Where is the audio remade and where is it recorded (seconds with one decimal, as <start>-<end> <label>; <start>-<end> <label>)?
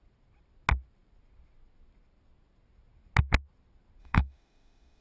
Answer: 0.0-4.0 recorded; 4.0-5.0 remade